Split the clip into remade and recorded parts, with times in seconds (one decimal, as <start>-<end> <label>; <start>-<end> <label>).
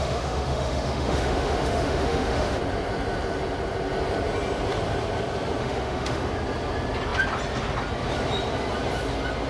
0.0-2.6 remade; 2.6-5.6 recorded; 5.6-6.3 remade; 6.3-9.5 recorded